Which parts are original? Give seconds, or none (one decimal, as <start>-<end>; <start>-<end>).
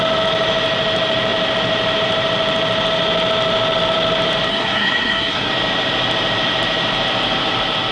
0.0-4.5; 5.5-7.9